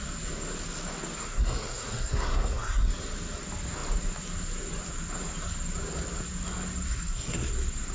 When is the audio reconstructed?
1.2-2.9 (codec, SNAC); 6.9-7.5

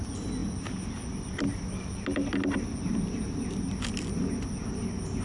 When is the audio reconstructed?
none

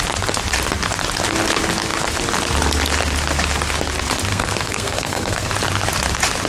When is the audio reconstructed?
4.3-5.5 (codec, SNAC)

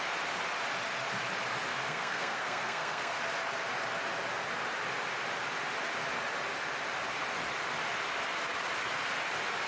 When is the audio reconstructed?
1.7-3.2 (codec, SNAC)